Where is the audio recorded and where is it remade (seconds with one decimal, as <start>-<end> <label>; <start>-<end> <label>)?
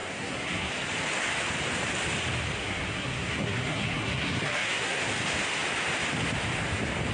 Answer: 0.0-0.7 remade; 0.7-2.6 recorded; 2.6-5.0 remade; 5.0-7.1 recorded